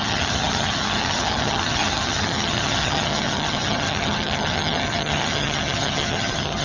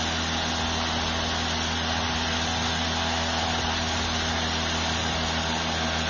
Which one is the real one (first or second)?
second